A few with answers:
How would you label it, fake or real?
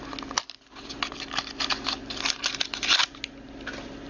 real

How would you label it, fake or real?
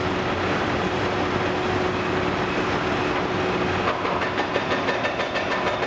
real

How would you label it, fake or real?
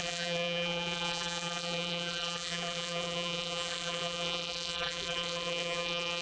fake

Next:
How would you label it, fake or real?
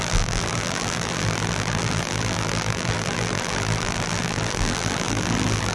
fake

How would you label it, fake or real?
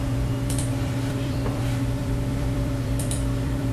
fake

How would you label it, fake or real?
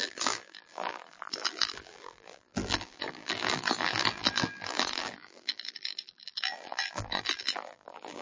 fake